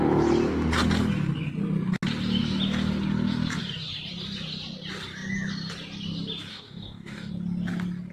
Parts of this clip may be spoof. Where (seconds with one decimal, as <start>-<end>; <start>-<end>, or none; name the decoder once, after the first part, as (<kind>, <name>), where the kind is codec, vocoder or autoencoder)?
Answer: 6.5-7.3 (codec, DAC)